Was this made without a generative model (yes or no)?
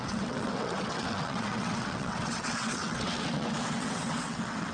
no